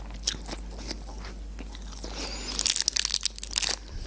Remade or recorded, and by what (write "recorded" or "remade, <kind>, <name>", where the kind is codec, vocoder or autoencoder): recorded